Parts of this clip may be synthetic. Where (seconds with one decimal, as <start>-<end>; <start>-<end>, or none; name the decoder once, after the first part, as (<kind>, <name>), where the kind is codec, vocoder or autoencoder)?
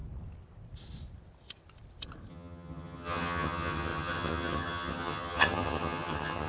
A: 2.3-6.5 (vocoder, HiFi-GAN)